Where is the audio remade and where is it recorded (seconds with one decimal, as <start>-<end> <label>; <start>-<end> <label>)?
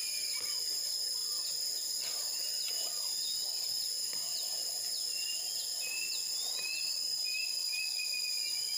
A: 0.0-8.8 recorded